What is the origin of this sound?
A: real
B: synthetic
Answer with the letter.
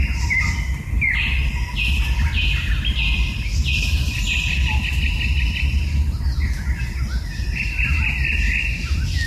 A